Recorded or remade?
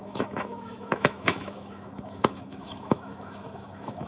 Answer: remade